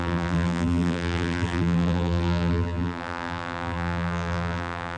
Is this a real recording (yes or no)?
no